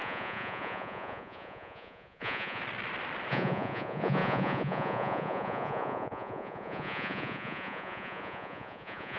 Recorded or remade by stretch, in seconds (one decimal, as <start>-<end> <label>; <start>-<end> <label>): 0.0-2.6 remade; 2.6-3.3 recorded; 3.3-9.2 remade